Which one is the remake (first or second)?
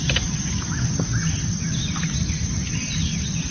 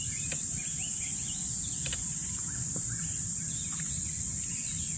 second